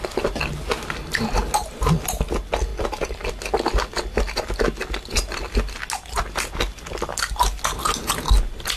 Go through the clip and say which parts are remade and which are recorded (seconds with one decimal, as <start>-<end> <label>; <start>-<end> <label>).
0.0-8.8 recorded